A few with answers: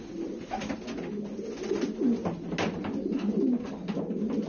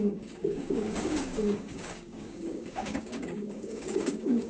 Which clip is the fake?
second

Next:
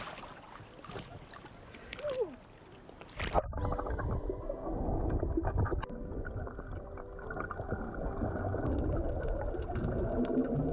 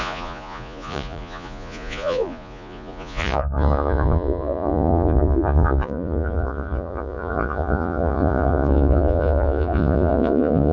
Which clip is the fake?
second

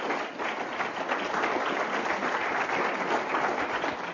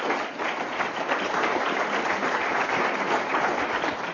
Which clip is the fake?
second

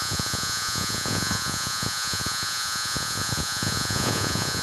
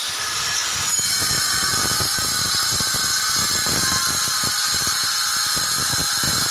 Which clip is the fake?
first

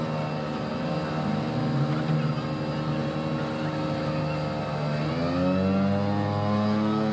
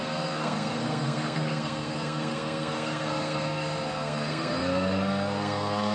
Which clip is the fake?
second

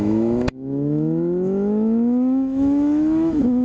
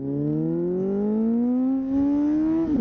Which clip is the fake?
first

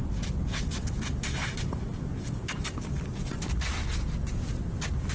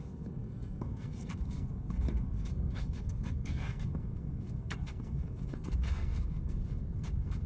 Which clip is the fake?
second